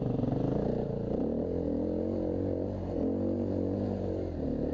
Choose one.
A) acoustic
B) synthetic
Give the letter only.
A